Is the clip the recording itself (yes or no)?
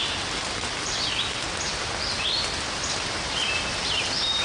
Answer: yes